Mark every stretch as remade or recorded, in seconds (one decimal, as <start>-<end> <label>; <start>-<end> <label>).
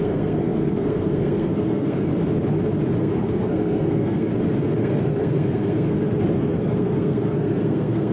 0.0-2.1 remade; 2.1-3.0 recorded; 3.0-4.3 remade; 4.3-4.8 recorded; 4.8-8.1 remade